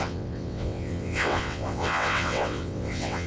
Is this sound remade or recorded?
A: remade